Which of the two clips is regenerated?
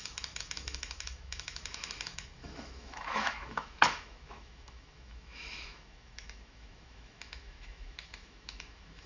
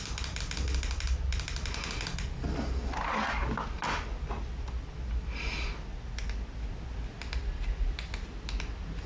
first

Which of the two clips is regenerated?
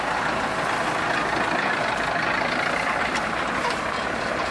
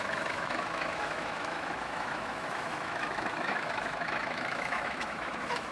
second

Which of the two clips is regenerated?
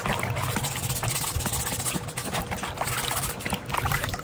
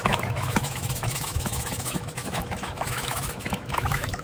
second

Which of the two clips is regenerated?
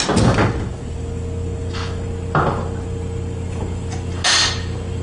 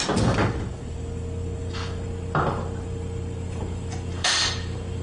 second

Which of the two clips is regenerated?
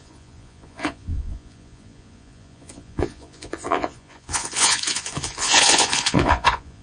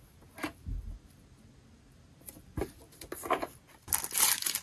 first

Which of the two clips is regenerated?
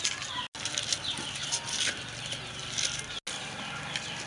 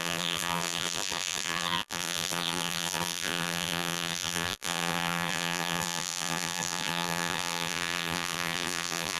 second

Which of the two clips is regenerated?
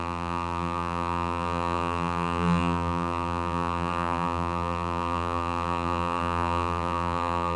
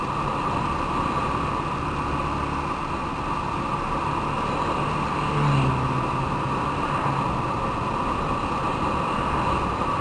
first